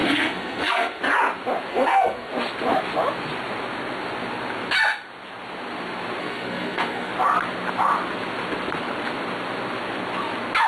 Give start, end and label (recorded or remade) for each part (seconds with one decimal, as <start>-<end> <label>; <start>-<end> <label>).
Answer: 0.0-1.0 remade; 1.0-1.7 recorded; 1.7-2.3 remade; 2.3-6.2 recorded; 6.2-7.1 remade; 7.1-10.7 recorded